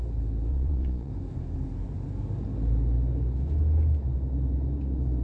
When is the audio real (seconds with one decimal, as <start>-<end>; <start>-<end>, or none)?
0.0-0.5; 1.1-5.2